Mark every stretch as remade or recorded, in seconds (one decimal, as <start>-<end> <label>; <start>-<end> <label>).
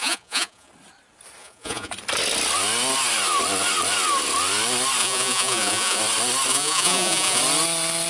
0.0-0.7 remade; 0.7-1.4 recorded; 1.4-1.9 remade; 1.9-5.0 recorded; 5.0-6.0 remade; 6.0-6.5 recorded; 6.5-7.4 remade; 7.4-8.1 recorded